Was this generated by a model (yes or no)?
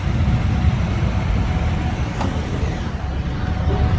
no